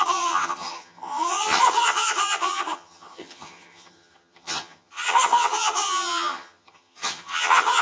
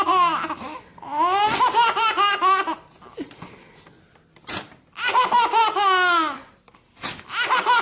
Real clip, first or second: second